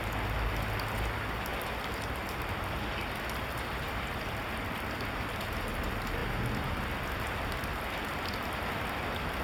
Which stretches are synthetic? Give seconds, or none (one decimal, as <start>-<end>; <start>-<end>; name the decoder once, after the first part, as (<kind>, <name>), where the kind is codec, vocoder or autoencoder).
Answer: none